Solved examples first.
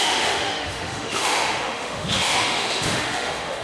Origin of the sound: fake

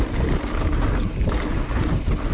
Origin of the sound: real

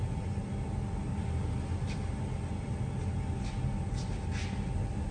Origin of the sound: real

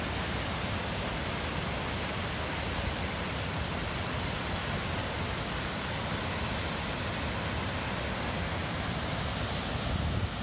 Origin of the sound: real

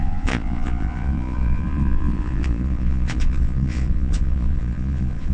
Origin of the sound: fake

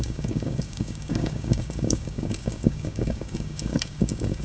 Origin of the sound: fake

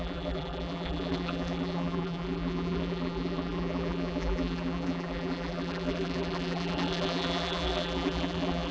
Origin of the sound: fake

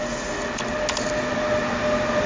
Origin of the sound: real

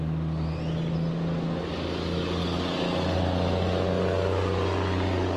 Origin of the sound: real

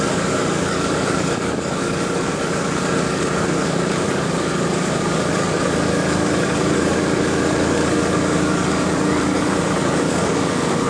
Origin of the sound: fake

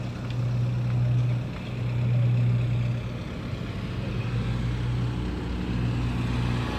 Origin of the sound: real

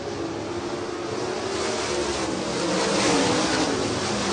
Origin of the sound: real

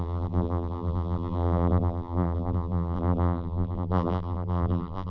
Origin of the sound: fake